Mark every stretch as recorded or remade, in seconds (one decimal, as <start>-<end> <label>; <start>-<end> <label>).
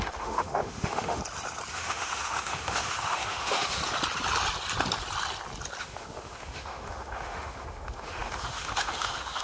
0.0-1.2 remade; 1.2-1.7 recorded; 1.7-3.8 remade; 3.8-5.8 recorded; 5.8-9.4 remade